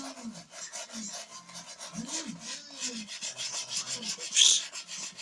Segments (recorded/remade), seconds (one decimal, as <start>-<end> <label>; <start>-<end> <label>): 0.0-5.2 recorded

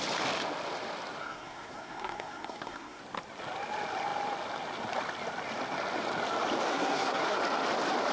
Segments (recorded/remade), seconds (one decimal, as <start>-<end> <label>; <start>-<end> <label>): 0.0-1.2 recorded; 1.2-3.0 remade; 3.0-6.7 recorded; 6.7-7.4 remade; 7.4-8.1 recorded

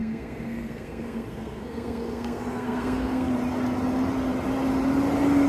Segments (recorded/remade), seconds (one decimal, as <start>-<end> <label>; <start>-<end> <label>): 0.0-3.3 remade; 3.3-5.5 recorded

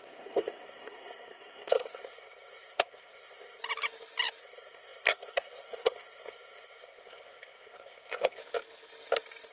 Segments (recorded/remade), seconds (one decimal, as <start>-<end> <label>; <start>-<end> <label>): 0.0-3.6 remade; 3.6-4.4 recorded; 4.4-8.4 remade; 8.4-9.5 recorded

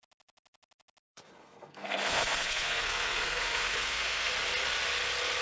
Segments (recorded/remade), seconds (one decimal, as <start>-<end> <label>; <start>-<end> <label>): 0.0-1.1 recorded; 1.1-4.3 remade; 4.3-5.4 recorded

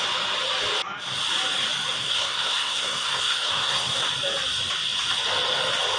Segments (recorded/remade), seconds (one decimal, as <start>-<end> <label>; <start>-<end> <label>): 0.0-1.9 recorded; 1.9-4.1 remade; 4.1-6.0 recorded

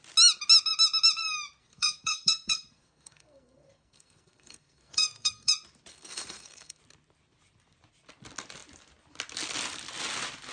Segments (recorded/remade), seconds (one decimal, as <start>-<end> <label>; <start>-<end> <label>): 0.0-1.6 recorded; 1.6-5.5 remade; 5.5-5.9 recorded; 5.9-6.8 remade; 6.8-10.5 recorded

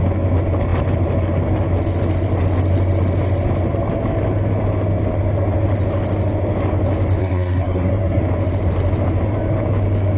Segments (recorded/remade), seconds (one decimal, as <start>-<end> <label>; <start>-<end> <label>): 0.0-7.2 recorded; 7.2-8.2 remade; 8.2-10.2 recorded